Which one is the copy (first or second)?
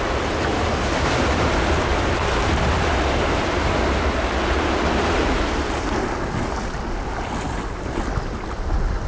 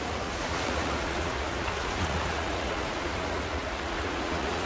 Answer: second